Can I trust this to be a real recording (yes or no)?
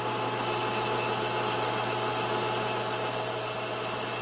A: yes